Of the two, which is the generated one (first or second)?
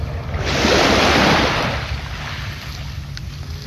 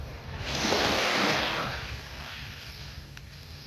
second